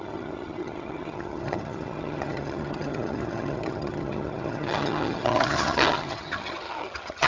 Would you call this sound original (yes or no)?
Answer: no